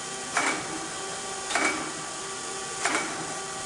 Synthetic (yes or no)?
no